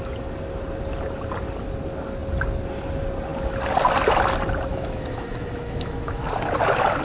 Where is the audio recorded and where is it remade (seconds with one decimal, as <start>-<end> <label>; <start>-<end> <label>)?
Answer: 0.0-4.7 recorded; 4.7-6.2 remade; 6.2-7.0 recorded